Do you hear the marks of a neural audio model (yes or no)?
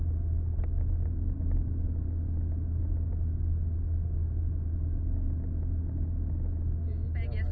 no